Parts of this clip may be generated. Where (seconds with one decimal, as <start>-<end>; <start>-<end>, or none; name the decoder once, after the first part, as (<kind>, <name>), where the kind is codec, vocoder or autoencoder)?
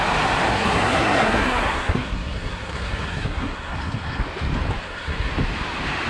0.5-4.2 (codec, SNAC); 4.8-5.3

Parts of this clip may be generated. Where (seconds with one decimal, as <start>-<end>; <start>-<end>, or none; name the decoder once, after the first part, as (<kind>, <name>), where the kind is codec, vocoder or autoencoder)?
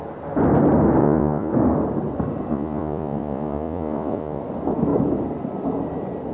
1.0-1.5 (vocoder, Vocos); 2.5-4.4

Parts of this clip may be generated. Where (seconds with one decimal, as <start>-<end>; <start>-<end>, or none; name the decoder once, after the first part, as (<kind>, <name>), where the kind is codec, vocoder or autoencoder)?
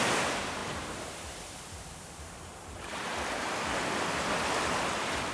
0.0-3.1 (vocoder, BigVGAN v2)